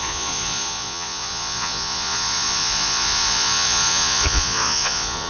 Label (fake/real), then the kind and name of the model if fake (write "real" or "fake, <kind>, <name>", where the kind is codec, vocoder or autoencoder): fake, vocoder, Vocos